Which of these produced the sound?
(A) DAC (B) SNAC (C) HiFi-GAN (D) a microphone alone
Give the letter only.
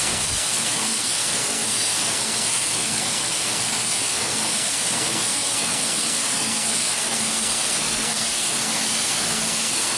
B